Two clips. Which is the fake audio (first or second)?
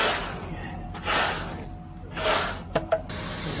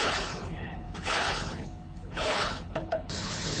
second